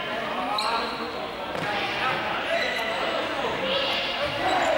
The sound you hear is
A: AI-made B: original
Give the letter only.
B